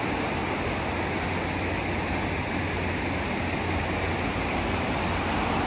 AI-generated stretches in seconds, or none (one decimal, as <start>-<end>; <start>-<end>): none